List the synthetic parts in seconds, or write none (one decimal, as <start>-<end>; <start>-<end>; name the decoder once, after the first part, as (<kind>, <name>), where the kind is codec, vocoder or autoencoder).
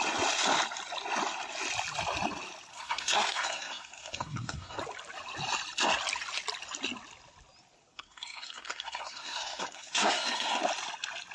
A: 2.7-4.8 (codec, SNAC); 7.9-10.6